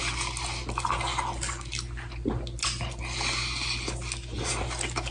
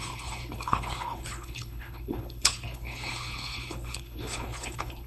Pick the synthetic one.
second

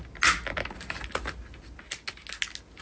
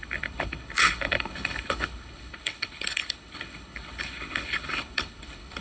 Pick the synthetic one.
second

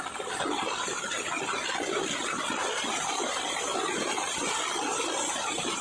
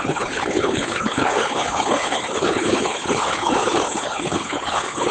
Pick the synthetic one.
second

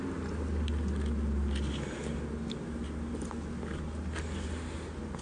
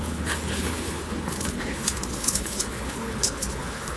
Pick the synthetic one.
second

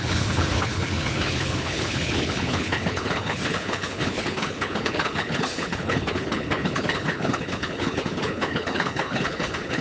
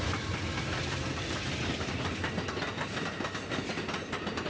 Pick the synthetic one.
first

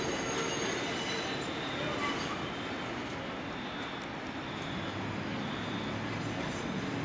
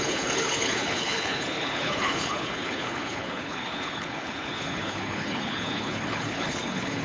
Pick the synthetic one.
second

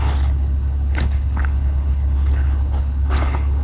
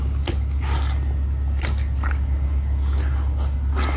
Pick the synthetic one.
first